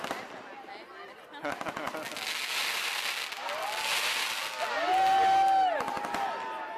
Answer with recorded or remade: recorded